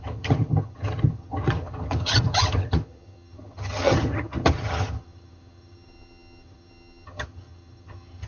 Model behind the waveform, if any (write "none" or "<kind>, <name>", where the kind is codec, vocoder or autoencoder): vocoder, HiFi-GAN